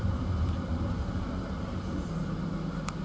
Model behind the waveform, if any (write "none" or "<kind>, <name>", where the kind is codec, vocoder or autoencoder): none